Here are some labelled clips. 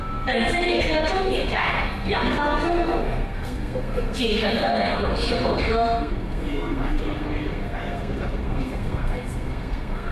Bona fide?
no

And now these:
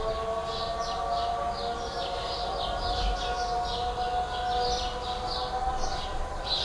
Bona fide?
yes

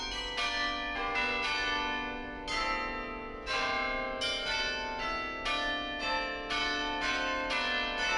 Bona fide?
yes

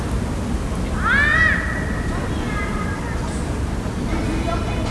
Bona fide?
yes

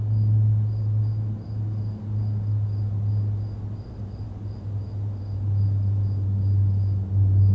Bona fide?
yes